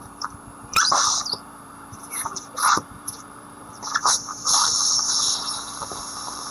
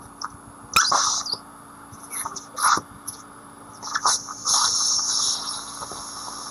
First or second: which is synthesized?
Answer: first